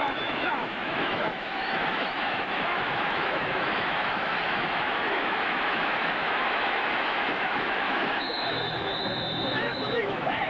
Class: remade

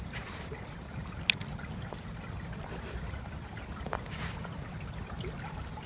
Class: remade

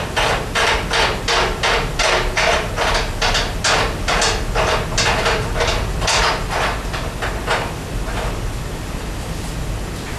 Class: recorded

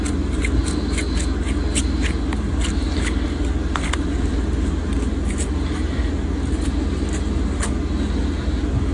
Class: recorded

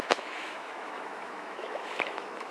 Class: remade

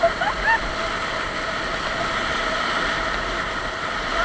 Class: recorded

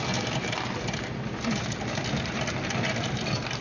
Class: recorded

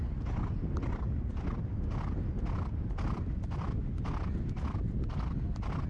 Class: recorded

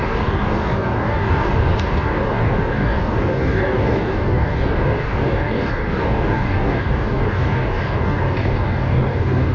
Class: remade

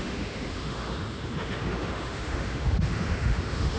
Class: remade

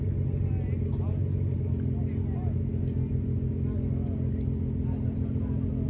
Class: recorded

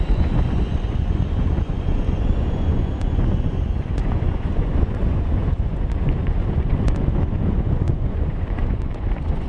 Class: remade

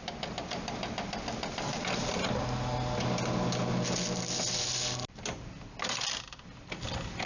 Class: recorded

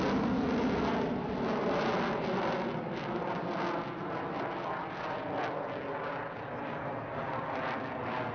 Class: recorded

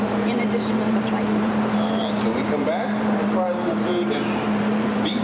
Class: remade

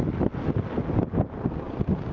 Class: recorded